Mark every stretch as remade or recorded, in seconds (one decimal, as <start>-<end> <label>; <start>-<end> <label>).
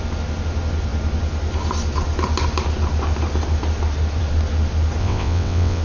0.0-5.0 recorded; 5.0-5.8 remade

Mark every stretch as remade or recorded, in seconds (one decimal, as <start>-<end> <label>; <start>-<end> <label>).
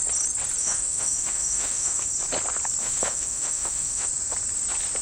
0.0-0.6 recorded; 0.6-2.1 remade; 2.1-2.8 recorded; 2.8-4.1 remade; 4.1-5.0 recorded